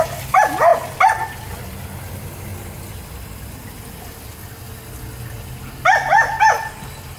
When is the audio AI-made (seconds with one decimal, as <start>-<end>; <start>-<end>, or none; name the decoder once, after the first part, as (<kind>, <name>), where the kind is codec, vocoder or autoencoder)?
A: none